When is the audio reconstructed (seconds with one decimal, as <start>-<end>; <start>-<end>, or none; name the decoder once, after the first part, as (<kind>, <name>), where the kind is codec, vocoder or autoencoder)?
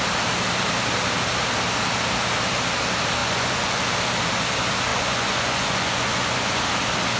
3.2-3.8 (vocoder, Vocos); 4.9-6.6